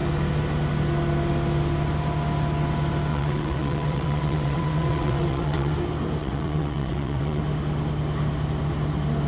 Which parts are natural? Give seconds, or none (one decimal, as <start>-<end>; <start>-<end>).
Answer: 0.0-3.1; 5.7-6.2; 7.4-9.3